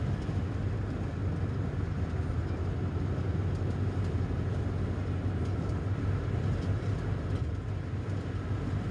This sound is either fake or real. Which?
real